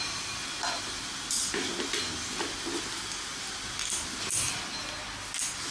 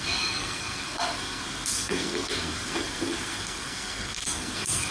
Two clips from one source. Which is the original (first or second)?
first